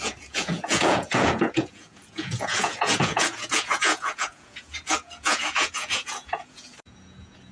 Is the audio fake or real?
fake